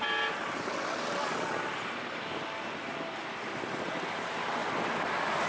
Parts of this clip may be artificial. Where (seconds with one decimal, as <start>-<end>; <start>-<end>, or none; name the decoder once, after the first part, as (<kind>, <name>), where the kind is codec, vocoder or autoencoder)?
none